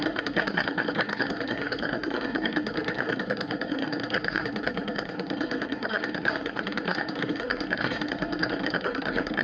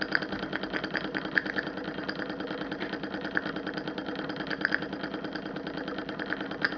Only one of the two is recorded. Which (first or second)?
second